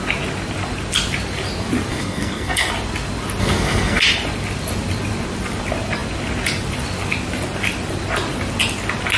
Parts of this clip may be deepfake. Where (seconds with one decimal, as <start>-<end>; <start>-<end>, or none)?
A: 1.9-2.7; 3.4-4.0